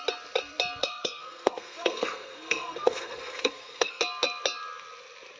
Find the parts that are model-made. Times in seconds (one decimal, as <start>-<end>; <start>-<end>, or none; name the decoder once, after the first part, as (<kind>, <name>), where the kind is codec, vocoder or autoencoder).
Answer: 0.8-4.0 (codec, SNAC)